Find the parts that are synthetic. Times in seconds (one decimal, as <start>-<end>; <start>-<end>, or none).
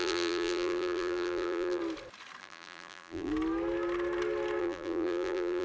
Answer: 0.0-1.8; 2.4-3.3; 4.6-5.6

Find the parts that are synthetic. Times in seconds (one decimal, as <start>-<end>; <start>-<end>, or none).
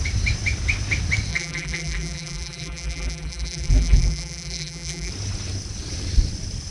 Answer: 1.3-5.1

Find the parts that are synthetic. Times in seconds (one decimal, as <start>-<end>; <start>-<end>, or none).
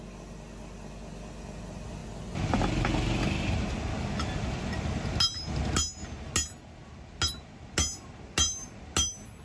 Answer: none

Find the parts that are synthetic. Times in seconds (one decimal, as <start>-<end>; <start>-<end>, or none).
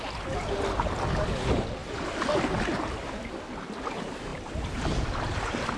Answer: none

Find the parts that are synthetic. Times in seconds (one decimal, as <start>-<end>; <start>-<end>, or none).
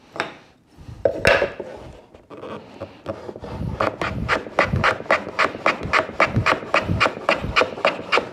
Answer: 6.4-7.5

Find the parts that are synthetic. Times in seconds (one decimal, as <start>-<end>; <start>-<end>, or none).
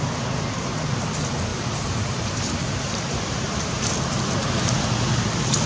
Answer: 1.5-3.8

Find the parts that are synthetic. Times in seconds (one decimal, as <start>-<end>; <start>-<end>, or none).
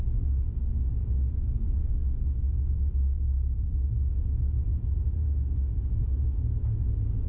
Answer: none